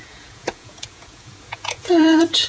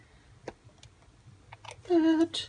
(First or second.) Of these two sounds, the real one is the second